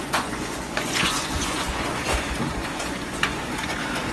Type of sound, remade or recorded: remade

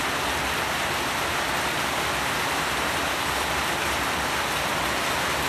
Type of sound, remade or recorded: recorded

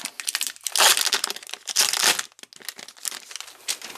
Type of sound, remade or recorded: recorded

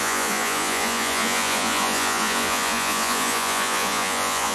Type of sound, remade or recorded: remade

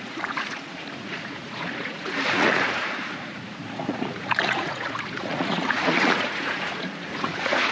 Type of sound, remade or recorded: remade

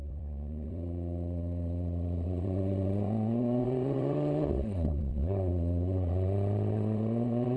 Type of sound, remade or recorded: remade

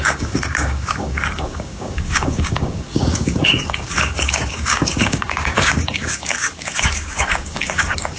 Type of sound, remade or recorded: remade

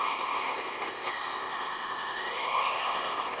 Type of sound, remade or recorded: remade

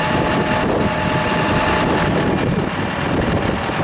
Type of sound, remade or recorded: recorded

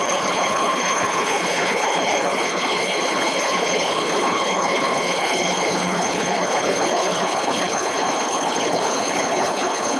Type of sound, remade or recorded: remade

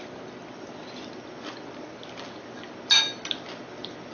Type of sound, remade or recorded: recorded